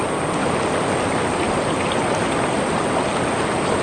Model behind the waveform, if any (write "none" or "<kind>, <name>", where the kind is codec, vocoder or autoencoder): none